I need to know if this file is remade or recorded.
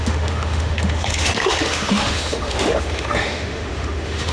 remade